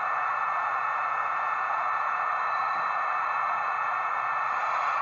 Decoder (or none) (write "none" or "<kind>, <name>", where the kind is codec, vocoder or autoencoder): vocoder, Vocos